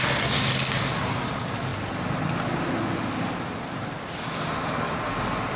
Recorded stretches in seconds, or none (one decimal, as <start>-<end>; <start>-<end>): 0.0-5.6